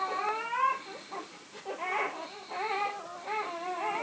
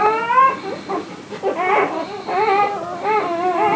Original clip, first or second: second